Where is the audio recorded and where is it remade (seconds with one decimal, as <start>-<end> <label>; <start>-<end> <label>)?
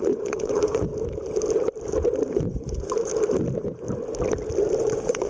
0.0-0.9 remade; 0.9-2.3 recorded; 2.3-3.1 remade; 3.1-4.8 recorded; 4.8-5.3 remade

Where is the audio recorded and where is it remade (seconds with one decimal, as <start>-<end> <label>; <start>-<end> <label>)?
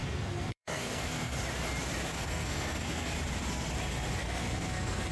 0.0-1.4 remade; 1.4-2.1 recorded; 2.1-3.1 remade; 3.1-4.2 recorded; 4.2-5.1 remade